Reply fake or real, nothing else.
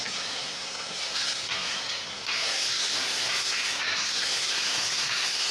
fake